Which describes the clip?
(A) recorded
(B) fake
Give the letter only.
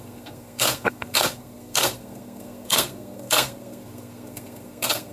B